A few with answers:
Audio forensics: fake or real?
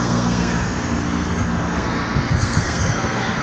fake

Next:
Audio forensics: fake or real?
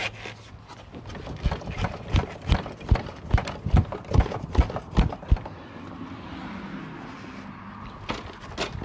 real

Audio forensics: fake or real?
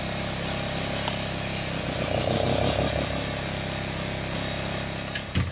real